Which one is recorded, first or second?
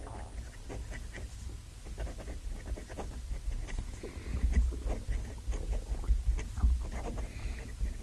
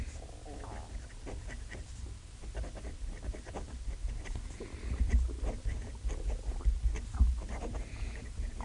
first